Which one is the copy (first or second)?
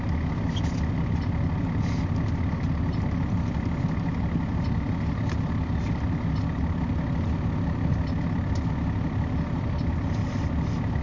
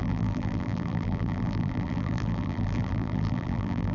second